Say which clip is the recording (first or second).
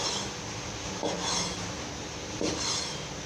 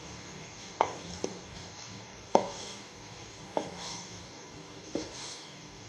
first